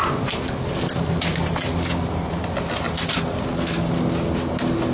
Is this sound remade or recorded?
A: recorded